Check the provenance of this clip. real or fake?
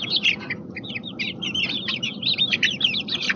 real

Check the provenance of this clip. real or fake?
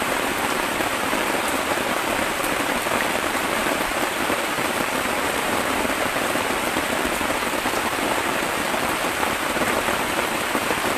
fake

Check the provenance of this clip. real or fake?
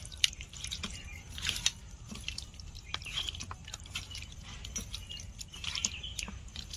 fake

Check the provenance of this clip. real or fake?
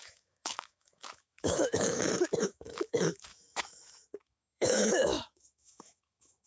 fake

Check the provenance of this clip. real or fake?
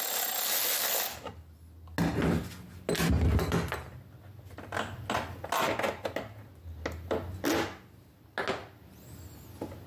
real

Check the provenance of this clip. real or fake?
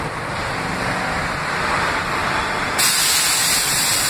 real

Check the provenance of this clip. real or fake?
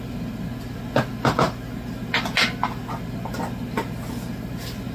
real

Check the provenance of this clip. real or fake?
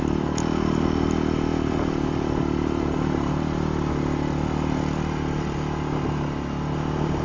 real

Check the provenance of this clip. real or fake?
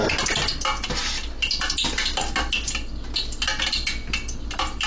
real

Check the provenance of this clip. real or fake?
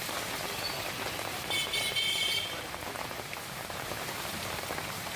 fake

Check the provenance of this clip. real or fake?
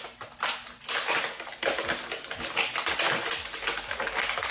real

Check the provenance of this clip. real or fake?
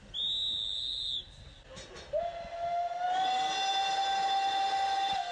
real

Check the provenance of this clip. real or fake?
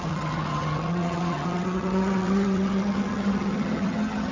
fake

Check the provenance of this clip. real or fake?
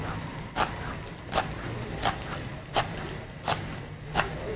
real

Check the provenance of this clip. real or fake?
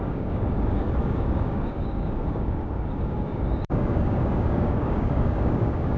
fake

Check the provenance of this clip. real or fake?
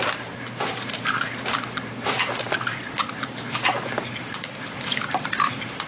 fake